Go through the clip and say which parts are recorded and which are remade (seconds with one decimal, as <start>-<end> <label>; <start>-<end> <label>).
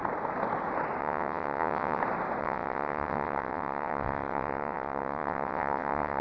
0.0-1.0 recorded; 1.0-2.0 remade; 2.0-2.4 recorded; 2.4-6.2 remade